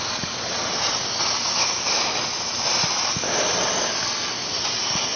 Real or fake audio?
real